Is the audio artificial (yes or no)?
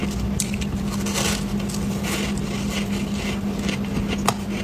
no